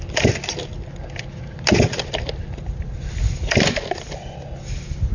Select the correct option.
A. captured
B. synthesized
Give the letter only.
A